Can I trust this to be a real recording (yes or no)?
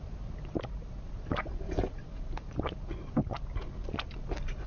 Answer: yes